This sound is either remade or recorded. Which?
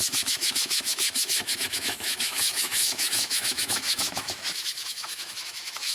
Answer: remade